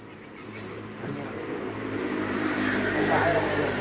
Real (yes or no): no